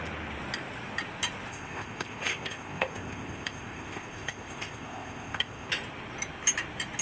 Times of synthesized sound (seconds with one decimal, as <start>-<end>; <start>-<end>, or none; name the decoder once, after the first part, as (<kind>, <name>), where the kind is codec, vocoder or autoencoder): 1.5-5.7 (codec, ZipCodec)